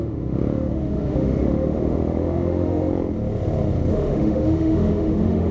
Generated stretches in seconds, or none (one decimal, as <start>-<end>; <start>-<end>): 0.0-2.9; 3.9-5.5